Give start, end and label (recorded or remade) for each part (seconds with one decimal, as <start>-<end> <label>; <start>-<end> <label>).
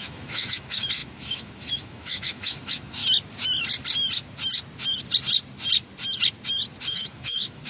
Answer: 0.0-3.0 remade; 3.0-6.8 recorded; 6.8-7.7 remade